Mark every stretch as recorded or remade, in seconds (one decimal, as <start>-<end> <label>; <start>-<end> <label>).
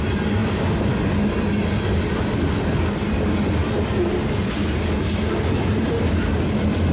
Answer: 0.0-6.9 recorded